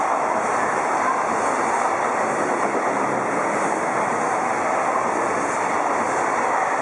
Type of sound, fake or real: real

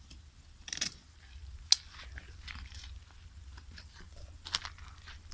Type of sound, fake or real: real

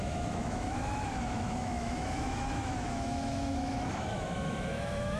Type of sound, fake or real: fake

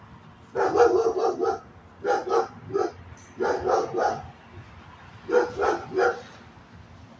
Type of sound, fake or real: real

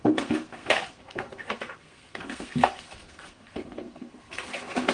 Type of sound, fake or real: fake